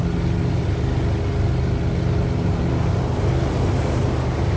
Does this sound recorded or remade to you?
recorded